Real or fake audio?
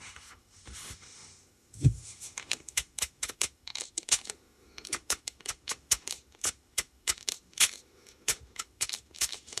fake